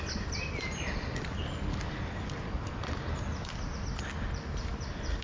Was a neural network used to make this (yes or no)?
no